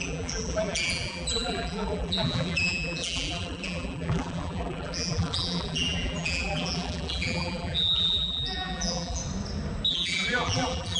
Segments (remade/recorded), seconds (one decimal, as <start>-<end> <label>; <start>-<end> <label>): 0.0-9.2 remade; 9.2-9.9 recorded; 9.9-11.0 remade